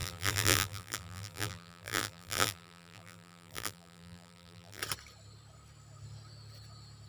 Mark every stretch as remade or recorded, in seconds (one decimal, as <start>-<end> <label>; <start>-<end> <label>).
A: 0.0-4.8 remade; 4.8-7.1 recorded